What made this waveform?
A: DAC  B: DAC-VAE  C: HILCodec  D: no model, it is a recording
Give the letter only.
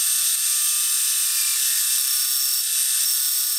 D